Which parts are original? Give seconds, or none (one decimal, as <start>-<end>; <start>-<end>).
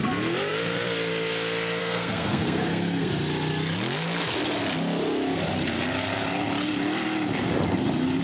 0.0-1.8; 3.1-8.2